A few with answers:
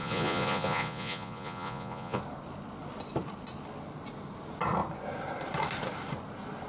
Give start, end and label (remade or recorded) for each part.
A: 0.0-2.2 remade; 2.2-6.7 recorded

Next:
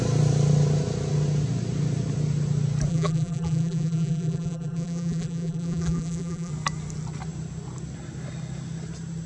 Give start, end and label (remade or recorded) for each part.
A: 0.0-2.9 recorded; 2.9-6.5 remade; 6.5-9.3 recorded

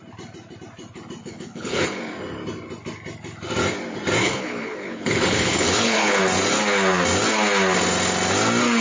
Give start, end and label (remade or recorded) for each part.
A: 0.0-1.2 recorded; 1.2-2.0 remade; 2.0-4.2 recorded; 4.2-6.2 remade; 6.2-8.8 recorded

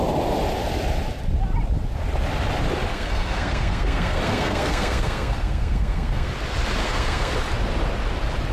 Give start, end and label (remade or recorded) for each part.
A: 0.0-2.9 recorded; 2.9-6.3 remade; 6.3-6.8 recorded; 6.8-7.3 remade; 7.3-8.5 recorded

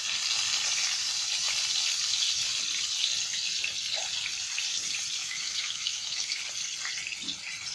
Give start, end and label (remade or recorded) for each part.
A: 0.0-5.2 recorded; 5.2-6.4 remade; 6.4-7.7 recorded

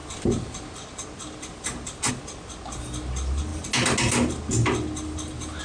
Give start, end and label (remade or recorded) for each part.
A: 0.0-5.6 recorded

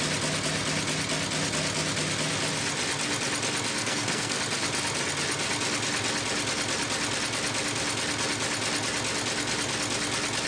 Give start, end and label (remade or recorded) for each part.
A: 0.0-3.8 recorded; 3.8-4.4 remade; 4.4-10.5 recorded

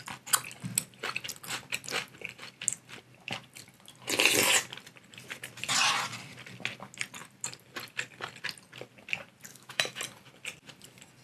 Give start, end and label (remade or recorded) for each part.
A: 0.0-9.5 recorded; 9.5-10.0 remade; 10.0-11.2 recorded